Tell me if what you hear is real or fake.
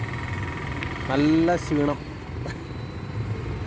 real